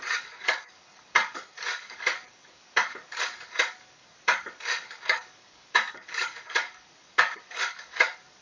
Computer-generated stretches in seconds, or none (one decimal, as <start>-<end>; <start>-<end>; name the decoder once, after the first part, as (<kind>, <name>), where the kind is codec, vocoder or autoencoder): 0.0-8.4 (codec, DAC)